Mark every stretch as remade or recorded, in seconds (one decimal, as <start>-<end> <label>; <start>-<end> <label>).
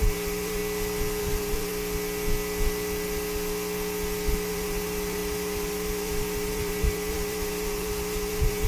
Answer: 0.0-0.6 remade; 0.6-1.2 recorded; 1.2-1.7 remade; 1.7-4.5 recorded; 4.5-8.7 remade